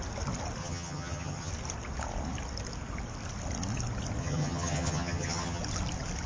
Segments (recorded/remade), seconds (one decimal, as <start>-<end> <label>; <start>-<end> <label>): 0.0-0.6 recorded; 0.6-1.5 remade; 1.5-4.2 recorded; 4.2-5.6 remade; 5.6-6.3 recorded